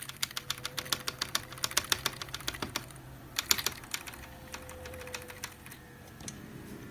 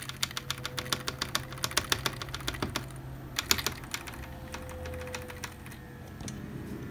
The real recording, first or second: second